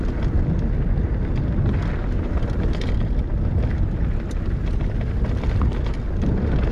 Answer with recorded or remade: recorded